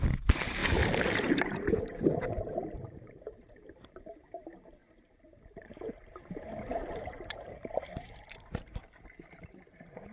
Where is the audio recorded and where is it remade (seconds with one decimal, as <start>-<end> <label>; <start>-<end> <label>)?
0.0-10.1 remade

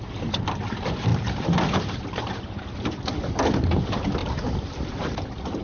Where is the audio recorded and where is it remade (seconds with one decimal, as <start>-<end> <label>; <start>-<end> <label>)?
0.0-1.1 recorded; 1.1-2.6 remade; 2.6-5.6 recorded